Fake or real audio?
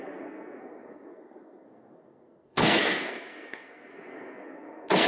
fake